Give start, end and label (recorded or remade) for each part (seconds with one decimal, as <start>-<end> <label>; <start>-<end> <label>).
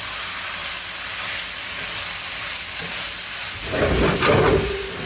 0.0-0.6 recorded; 0.6-3.7 remade; 3.7-5.1 recorded